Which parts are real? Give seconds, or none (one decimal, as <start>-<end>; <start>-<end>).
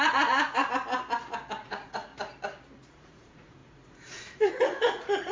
0.6-1.6; 2.1-2.9